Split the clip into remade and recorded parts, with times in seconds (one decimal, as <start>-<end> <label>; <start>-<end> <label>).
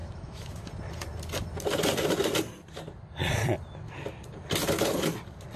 0.0-0.7 remade; 0.7-5.6 recorded